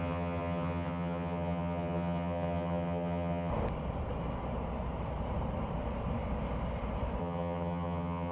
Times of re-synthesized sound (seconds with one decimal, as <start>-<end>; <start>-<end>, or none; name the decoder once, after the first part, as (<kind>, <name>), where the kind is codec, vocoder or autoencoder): 0.0-3.5 (vocoder, HiFi-GAN); 7.2-8.3